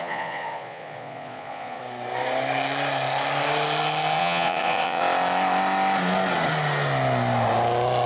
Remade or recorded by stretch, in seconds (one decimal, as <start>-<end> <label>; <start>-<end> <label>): 0.0-1.8 remade; 1.8-4.2 recorded; 4.2-5.0 remade; 5.0-8.1 recorded